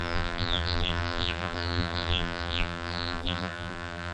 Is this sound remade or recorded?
remade